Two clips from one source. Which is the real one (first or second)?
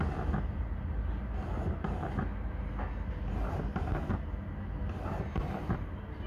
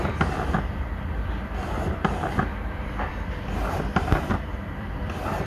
first